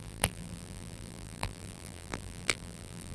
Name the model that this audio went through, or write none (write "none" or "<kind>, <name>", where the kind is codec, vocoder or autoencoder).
vocoder, BigVGAN v2